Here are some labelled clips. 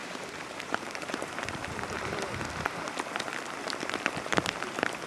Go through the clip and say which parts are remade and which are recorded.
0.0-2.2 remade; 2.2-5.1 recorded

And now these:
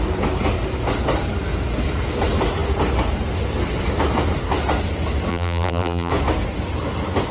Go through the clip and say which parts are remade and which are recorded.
0.0-5.3 recorded; 5.3-6.1 remade; 6.1-7.3 recorded

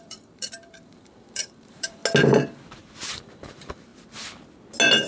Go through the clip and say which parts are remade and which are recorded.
0.0-2.0 remade; 2.0-3.1 recorded; 3.1-3.9 remade; 3.9-5.1 recorded